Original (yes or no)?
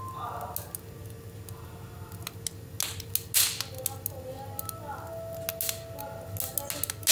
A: yes